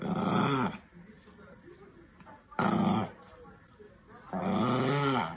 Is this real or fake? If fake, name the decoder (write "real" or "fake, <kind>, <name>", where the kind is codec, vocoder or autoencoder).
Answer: real